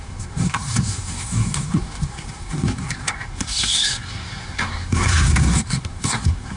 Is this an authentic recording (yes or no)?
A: no